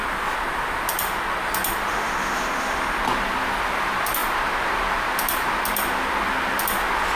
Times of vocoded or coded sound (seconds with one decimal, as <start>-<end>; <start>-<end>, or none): 1.9-3.0